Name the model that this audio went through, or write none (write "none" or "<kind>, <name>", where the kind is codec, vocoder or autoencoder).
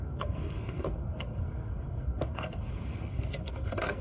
codec, SNAC